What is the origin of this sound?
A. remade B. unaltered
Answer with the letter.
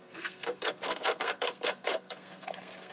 A